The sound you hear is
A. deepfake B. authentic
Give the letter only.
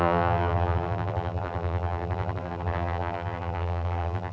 A